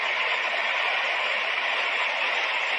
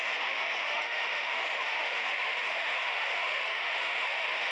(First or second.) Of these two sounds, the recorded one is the first